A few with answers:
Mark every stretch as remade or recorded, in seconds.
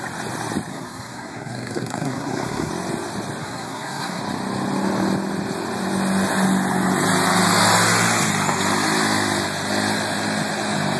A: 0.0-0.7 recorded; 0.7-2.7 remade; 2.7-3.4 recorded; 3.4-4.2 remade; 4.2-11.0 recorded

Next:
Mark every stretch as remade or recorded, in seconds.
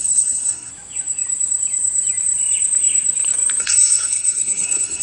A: 0.0-0.7 remade; 0.7-3.6 recorded; 3.6-5.0 remade